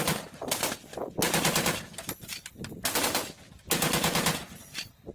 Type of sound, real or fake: fake